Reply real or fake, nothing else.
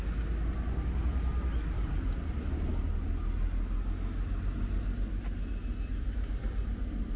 real